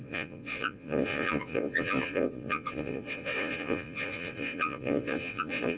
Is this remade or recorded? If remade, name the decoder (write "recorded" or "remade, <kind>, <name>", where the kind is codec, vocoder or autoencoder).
remade, vocoder, Vocos